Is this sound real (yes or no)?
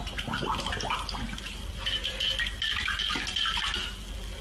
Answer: yes